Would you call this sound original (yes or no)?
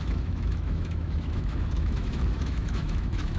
no